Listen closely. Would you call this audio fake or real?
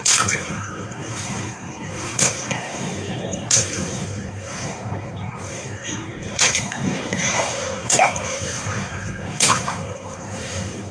fake